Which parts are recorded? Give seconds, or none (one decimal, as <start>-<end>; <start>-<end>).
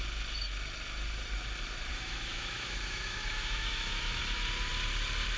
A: 0.0-1.9; 4.2-5.4